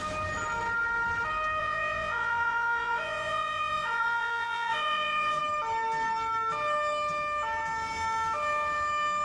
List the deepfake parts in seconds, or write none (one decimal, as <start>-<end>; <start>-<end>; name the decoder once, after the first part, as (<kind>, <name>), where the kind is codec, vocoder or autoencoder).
1.6-5.4 (vocoder, Vocos)